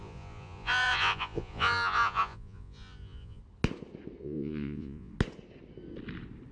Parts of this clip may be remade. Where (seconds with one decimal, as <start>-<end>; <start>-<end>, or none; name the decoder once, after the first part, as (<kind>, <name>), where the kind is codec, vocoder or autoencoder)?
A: 0.0-3.4 (vocoder, Vocos); 4.2-5.1